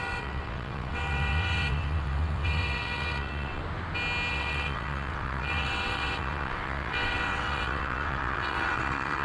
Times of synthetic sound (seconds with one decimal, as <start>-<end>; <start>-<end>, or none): 0.0-3.6; 4.3-9.2